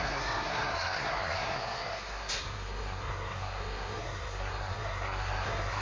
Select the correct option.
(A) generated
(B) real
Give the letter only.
A